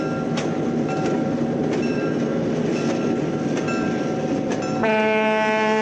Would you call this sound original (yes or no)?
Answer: yes